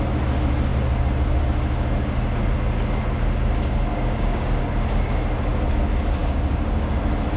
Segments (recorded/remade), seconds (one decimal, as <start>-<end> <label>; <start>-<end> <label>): 0.0-3.9 recorded; 3.9-4.6 remade; 4.6-6.2 recorded; 6.2-7.0 remade; 7.0-7.4 recorded